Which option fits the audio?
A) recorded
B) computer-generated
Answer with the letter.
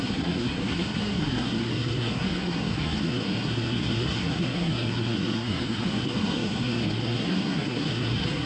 B